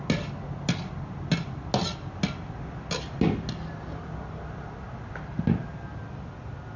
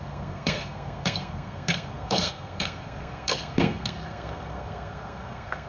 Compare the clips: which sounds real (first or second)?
first